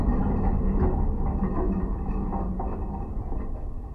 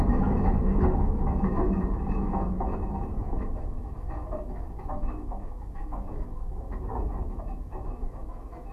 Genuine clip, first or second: first